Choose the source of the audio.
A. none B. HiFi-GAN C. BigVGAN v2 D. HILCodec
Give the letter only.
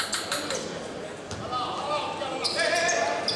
A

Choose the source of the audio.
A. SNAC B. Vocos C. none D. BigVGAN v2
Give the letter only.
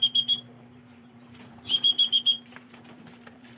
D